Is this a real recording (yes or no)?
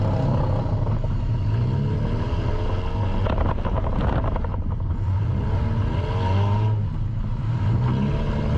yes